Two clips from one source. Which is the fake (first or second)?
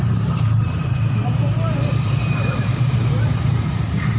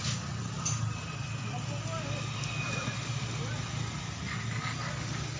first